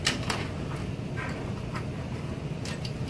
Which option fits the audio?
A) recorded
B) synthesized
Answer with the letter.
A